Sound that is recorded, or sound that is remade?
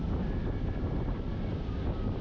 recorded